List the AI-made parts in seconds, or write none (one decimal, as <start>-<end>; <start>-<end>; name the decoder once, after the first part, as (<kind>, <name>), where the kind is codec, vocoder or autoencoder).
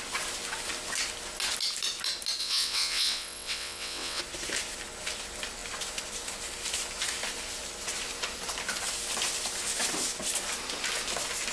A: 2.4-4.2 (vocoder, WaveNeXt)